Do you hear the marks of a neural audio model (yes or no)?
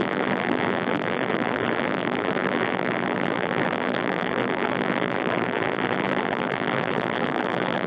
yes